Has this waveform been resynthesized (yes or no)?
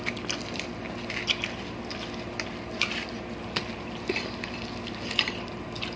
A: no